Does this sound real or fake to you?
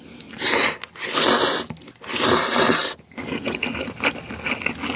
real